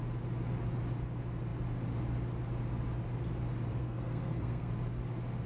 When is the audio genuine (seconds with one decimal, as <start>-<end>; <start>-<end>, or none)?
0.0-3.8; 4.7-5.5